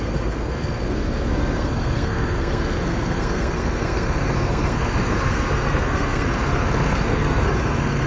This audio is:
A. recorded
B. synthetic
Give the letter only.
B